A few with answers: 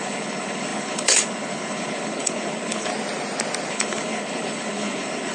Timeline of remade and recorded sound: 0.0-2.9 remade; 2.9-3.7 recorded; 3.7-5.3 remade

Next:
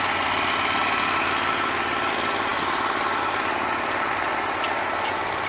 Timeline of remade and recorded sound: 0.0-5.5 recorded

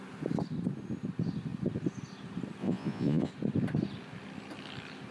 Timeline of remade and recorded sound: 0.0-2.6 recorded; 2.6-3.3 remade; 3.3-5.1 recorded

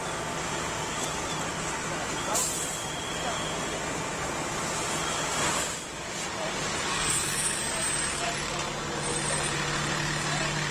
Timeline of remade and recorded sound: 0.0-6.9 recorded; 6.9-7.7 remade; 7.7-10.7 recorded